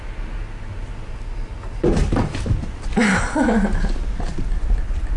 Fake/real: real